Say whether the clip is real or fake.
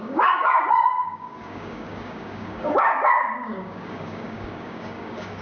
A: fake